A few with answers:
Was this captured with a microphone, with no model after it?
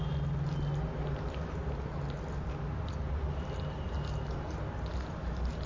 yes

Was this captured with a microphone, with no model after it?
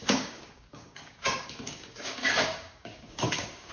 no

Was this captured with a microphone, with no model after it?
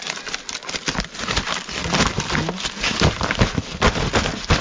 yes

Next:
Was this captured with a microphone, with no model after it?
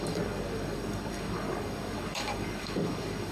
no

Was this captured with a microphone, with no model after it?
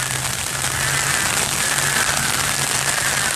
yes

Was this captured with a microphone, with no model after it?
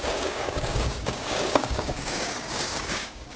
no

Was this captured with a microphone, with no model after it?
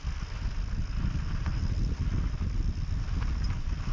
yes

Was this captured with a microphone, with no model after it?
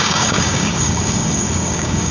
no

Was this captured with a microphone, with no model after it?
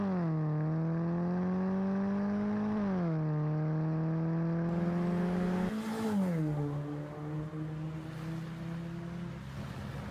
yes